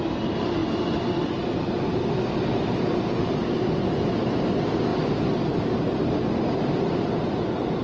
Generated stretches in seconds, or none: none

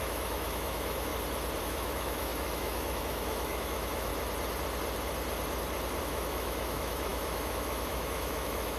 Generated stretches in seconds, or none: 0.0-1.1 (autoencoder, DAC-VAE); 1.6-4.1; 6.0-8.8

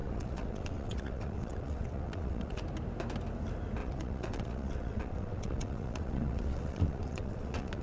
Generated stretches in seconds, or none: 0.0-2.6 (vocoder, WaveNeXt); 3.8-7.8